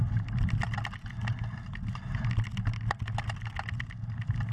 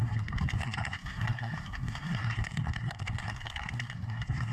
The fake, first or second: second